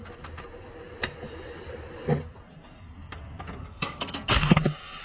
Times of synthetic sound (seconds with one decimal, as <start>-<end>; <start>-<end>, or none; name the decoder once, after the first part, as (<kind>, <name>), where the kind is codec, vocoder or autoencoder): 3.6-4.6 (codec, SNAC)